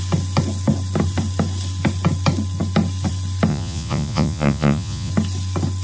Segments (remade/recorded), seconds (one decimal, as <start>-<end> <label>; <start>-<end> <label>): 0.0-3.5 recorded; 3.5-5.1 remade; 5.1-5.8 recorded